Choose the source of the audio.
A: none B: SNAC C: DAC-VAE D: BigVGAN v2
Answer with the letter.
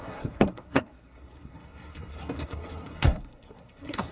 B